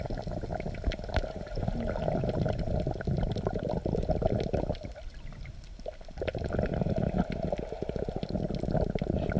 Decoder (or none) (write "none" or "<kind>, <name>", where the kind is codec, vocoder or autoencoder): none